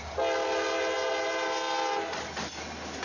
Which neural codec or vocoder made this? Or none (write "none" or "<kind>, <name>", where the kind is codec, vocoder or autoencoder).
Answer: none